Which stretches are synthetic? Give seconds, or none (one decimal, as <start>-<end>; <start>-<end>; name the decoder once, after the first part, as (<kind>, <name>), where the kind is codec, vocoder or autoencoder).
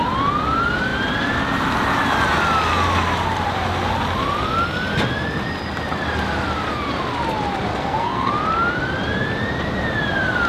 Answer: 7.7-8.3 (codec, SNAC)